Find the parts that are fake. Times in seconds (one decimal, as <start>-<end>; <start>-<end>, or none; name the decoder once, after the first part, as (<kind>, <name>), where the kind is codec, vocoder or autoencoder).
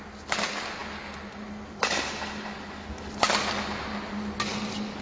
none